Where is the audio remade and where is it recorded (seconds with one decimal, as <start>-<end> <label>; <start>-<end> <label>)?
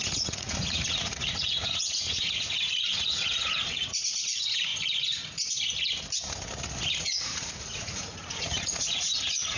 0.0-4.7 remade; 4.7-7.0 recorded; 7.0-9.6 remade